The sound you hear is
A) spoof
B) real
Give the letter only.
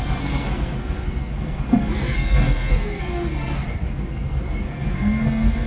A